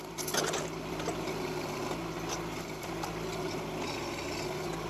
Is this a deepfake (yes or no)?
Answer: no